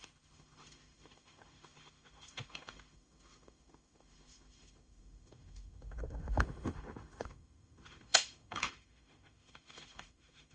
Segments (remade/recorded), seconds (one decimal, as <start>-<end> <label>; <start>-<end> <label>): 0.0-10.5 remade